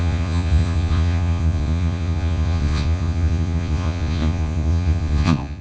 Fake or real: fake